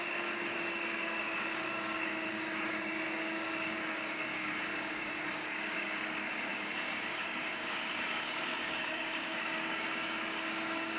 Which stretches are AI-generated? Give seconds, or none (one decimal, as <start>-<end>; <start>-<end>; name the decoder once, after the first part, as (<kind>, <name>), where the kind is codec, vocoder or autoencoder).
0.0-11.0 (codec, DAC)